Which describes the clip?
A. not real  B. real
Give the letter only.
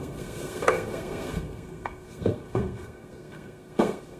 A